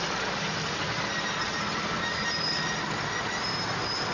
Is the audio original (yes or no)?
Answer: yes